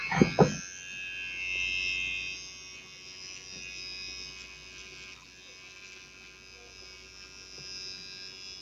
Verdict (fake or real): real